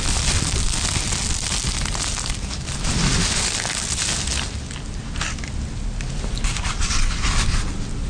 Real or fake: real